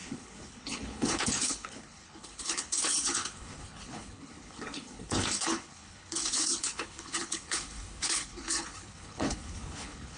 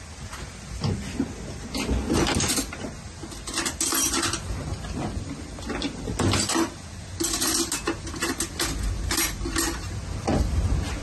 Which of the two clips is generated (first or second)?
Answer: first